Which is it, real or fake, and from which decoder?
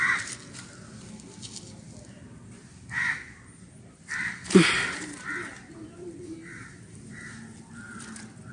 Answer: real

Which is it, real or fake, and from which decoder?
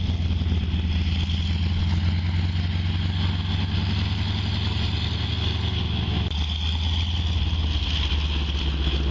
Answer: real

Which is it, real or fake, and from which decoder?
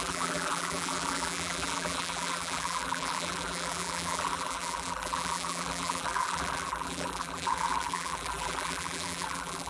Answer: fake, vocoder, BigVGAN v2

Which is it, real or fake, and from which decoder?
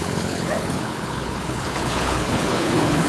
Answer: fake, codec, HILCodec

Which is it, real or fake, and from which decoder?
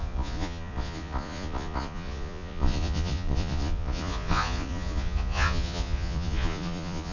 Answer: fake, vocoder, Vocos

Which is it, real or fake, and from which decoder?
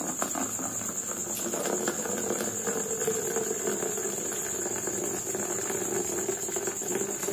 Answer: real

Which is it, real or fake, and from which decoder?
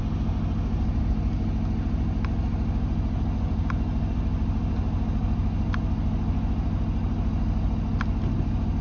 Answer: real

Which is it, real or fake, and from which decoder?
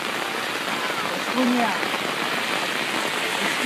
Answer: real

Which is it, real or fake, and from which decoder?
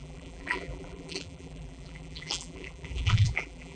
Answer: fake, vocoder, BigVGAN v2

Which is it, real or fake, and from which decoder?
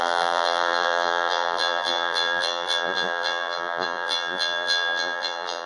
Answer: fake, vocoder, BigVGAN v2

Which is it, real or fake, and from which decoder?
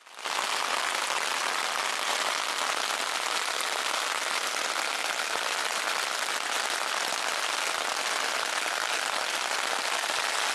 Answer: real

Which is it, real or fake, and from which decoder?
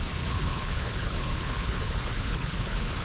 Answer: fake, codec, HILCodec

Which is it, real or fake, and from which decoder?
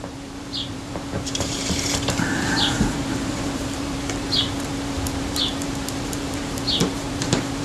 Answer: fake, vocoder, BigVGAN v2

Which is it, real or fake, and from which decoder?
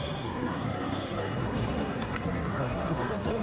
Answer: fake, codec, SNAC